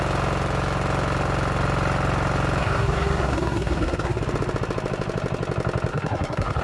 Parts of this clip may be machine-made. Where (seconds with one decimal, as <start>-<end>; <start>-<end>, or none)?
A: 2.6-4.2; 5.9-6.6